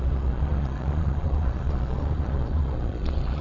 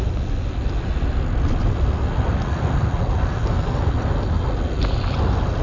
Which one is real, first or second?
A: second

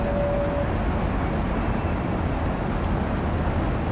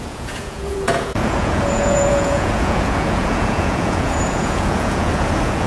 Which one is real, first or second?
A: first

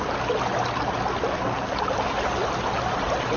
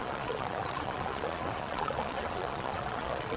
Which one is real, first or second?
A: first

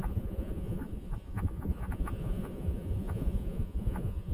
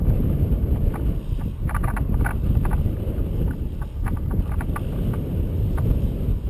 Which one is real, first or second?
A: second